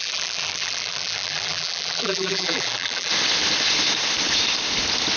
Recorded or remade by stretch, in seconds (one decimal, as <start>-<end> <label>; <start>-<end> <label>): 0.0-3.1 remade; 3.1-5.2 recorded